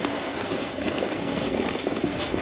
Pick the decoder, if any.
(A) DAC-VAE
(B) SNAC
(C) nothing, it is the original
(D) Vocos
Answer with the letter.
B